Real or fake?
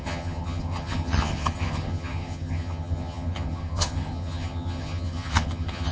fake